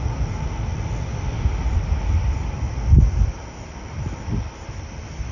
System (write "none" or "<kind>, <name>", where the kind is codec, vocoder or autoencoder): none